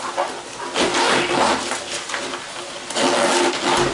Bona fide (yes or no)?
yes